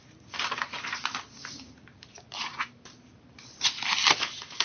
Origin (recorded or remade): remade